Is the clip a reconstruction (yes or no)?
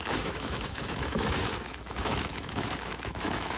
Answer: yes